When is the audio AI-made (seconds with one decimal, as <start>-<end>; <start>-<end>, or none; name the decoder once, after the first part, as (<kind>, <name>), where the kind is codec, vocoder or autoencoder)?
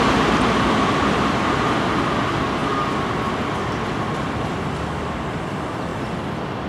none